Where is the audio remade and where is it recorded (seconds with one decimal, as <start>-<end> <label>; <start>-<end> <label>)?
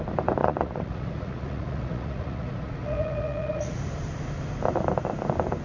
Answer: 0.0-0.4 recorded; 0.4-3.8 remade; 3.8-5.6 recorded